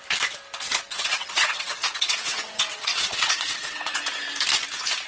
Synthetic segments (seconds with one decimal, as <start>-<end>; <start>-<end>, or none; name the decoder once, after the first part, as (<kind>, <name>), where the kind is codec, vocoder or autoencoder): 0.9-4.0 (vocoder, WaveNeXt)